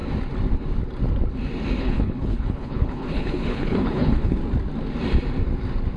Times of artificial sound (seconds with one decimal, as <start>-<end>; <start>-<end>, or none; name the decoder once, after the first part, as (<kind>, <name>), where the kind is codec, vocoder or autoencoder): 1.8-4.4 (codec, HILCodec)

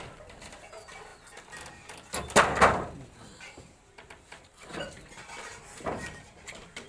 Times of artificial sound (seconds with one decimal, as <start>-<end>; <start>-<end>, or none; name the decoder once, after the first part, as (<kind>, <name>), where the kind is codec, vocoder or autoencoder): none

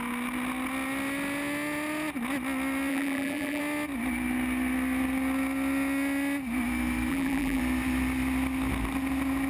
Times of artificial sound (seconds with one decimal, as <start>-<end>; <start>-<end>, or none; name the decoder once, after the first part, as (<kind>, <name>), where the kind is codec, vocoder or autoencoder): 2.9-3.6 (vocoder, BigVGAN v2); 7.1-7.6

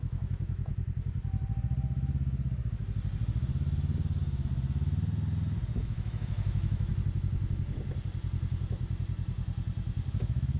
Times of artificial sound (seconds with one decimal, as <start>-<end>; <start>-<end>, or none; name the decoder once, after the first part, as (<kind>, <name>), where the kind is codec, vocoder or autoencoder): 0.0-0.7 (autoencoder, DAC-VAE); 5.8-6.9; 10.1-10.6

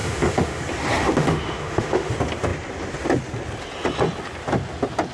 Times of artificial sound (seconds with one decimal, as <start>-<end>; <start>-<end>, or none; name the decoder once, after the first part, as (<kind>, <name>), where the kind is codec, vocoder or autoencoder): 0.0-0.6 (autoencoder, DAC-VAE); 1.0-2.1